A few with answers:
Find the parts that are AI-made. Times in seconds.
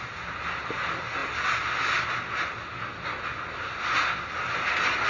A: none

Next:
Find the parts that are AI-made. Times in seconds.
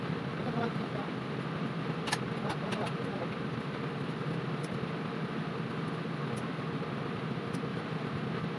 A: 0.4-1.0 (vocoder, BigVGAN v2); 7.7-8.2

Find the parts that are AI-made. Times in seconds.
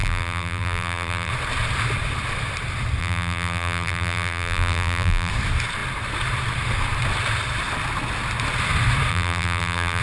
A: 0.0-1.3 (vocoder, BigVGAN v2); 3.0-5.3; 9.1-10.0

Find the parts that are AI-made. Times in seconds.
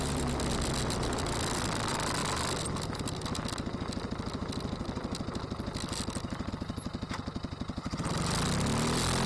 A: none